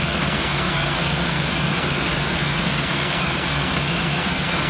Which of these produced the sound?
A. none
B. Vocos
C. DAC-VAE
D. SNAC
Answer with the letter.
D